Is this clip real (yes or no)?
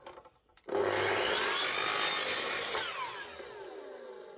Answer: yes